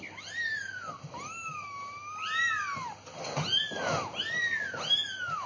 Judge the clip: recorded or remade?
recorded